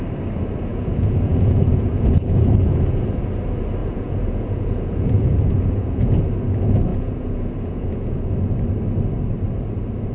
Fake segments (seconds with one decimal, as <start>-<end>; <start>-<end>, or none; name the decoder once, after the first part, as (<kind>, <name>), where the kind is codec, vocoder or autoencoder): 0.7-3.1 (vocoder, Vocos); 3.8-6.2; 6.9-8.3